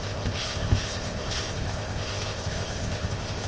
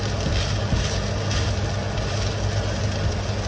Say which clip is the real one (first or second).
second